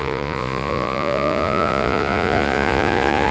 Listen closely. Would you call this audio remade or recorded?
remade